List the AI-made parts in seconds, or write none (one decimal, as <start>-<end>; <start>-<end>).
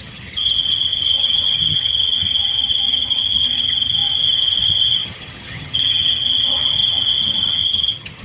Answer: 0.0-8.2